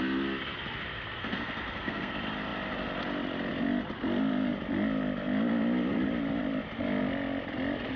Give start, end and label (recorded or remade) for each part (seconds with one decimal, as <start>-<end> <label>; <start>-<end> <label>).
0.0-1.2 recorded; 1.2-2.1 remade; 2.1-8.0 recorded